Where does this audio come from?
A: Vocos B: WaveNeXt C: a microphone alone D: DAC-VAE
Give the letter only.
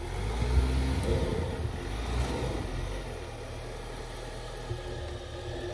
C